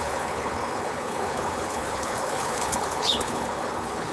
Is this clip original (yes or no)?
no